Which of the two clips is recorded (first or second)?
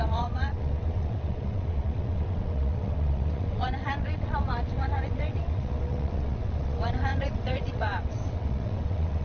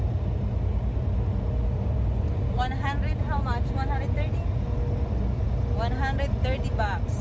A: second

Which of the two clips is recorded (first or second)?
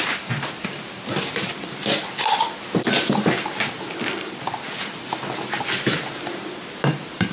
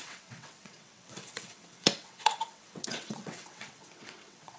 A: first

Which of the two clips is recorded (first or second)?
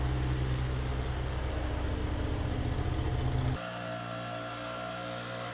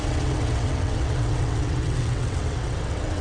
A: first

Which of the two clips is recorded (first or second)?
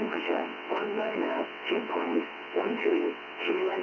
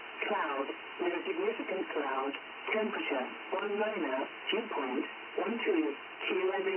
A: second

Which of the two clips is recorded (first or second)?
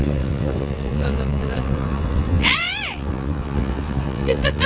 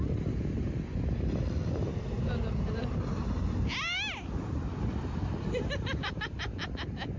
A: second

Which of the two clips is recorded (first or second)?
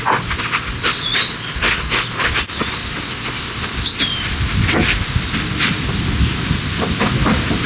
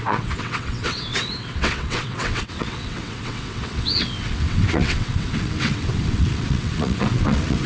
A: first